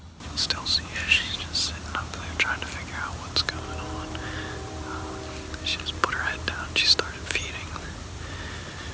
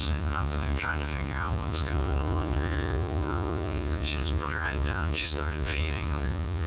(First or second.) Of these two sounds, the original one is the first